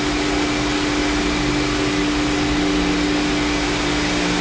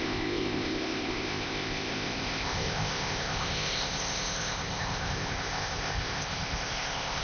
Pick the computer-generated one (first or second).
second